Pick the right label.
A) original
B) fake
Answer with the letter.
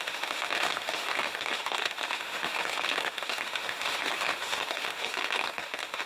B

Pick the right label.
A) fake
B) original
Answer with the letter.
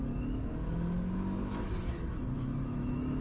A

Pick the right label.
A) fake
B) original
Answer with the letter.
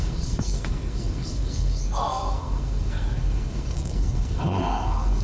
A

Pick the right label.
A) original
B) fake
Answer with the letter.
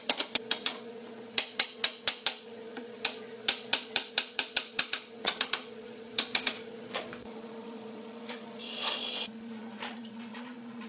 B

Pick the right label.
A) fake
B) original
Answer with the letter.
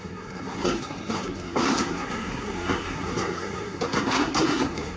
A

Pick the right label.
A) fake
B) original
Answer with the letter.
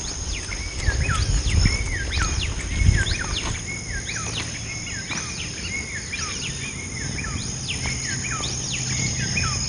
B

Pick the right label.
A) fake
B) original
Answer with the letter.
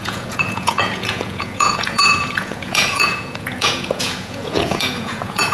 A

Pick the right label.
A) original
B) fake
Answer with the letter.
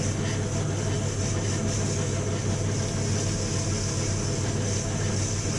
A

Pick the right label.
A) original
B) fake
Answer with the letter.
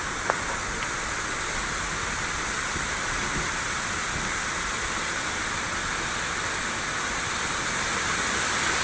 A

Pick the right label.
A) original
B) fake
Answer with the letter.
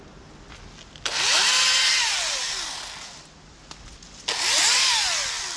A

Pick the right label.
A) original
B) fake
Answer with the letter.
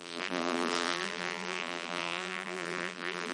B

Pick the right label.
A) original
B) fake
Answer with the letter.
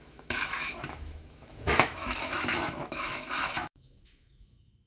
B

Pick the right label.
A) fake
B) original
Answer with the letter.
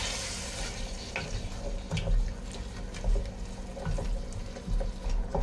B